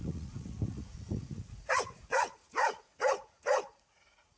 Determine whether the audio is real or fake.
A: fake